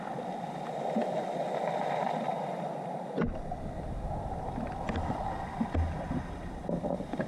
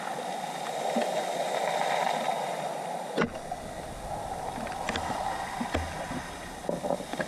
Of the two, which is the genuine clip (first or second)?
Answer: second